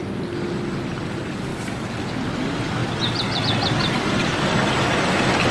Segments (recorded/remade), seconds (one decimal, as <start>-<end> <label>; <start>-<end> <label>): 0.0-5.5 recorded